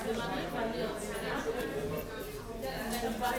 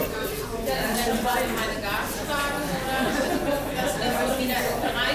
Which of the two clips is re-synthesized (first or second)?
second